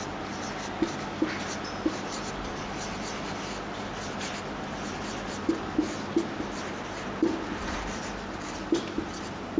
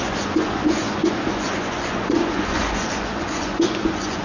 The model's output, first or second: second